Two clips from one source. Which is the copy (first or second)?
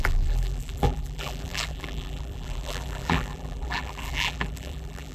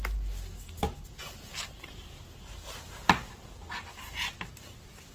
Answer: first